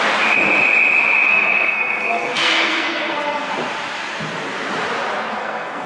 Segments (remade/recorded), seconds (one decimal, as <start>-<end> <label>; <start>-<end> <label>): 0.0-1.3 recorded; 1.3-3.5 remade; 3.5-5.4 recorded; 5.4-5.9 remade